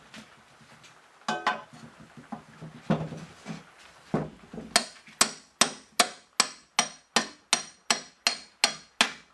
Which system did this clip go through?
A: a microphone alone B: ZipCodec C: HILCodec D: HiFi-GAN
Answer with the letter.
A